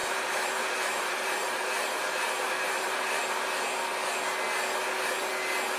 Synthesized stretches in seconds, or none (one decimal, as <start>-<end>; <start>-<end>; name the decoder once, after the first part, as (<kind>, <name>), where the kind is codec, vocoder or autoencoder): 0.0-3.3 (vocoder, BigVGAN v2)